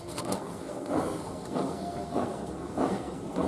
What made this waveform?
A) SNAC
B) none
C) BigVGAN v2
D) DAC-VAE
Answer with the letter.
A